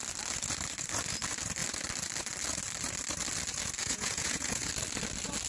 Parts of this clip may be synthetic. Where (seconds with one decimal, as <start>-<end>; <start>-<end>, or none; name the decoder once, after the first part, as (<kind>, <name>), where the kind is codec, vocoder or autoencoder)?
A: 3.8-4.7 (vocoder, Vocos)

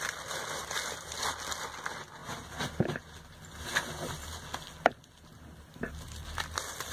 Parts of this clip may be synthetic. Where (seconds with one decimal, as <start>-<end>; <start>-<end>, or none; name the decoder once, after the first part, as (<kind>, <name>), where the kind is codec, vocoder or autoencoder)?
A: none

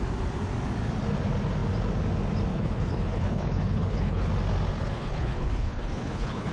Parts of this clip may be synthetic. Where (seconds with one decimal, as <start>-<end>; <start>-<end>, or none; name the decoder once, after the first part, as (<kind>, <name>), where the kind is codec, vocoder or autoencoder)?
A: 2.5-4.3 (codec, HILCodec); 4.8-6.5